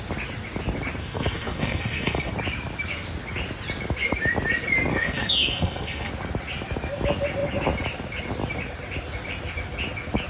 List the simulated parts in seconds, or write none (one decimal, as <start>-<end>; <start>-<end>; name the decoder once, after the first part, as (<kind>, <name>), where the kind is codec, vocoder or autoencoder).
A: 1.0-2.3 (codec, SNAC); 4.9-6.1